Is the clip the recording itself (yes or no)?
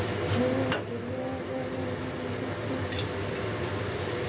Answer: yes